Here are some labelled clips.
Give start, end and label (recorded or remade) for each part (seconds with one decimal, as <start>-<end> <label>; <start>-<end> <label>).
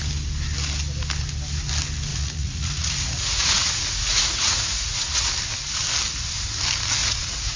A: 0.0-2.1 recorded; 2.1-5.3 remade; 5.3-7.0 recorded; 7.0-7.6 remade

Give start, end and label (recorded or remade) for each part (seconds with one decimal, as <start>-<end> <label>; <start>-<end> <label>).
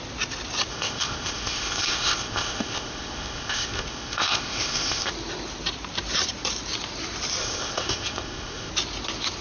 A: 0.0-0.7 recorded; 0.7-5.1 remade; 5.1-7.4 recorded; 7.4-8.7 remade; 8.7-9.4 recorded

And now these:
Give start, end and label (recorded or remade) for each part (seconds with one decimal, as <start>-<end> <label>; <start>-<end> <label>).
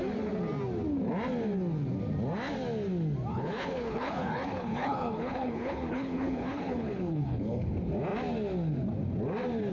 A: 0.0-3.3 recorded; 3.3-7.7 remade; 7.7-9.7 recorded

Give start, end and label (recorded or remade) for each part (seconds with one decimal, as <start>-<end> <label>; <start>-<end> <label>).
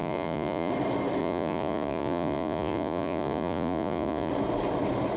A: 0.0-0.7 remade; 0.7-1.2 recorded; 1.2-4.3 remade; 4.3-5.2 recorded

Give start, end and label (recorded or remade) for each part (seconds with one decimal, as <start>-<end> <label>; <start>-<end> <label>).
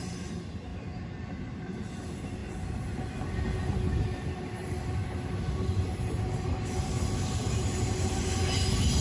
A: 0.0-9.0 recorded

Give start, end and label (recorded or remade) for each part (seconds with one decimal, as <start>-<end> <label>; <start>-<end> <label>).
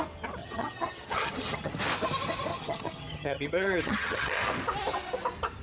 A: 0.0-0.4 recorded; 0.4-1.7 remade; 1.7-2.5 recorded; 2.5-4.5 remade; 4.5-5.6 recorded